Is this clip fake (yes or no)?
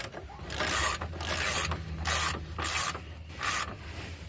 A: no